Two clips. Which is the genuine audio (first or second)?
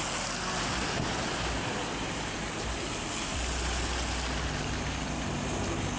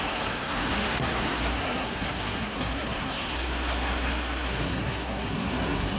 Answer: first